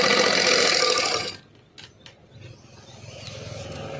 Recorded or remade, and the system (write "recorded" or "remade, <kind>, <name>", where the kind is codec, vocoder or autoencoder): recorded